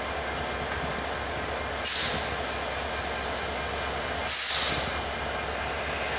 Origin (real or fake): real